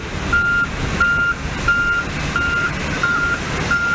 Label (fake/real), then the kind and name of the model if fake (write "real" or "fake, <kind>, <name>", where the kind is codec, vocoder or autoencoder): real